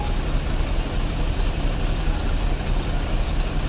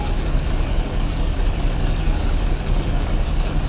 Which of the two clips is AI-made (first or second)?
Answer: second